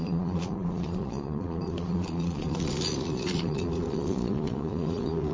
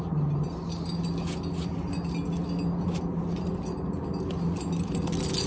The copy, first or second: first